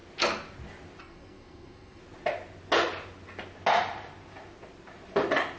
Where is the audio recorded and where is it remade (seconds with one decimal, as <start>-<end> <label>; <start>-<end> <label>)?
0.0-1.0 recorded; 1.0-2.0 remade; 2.0-5.6 recorded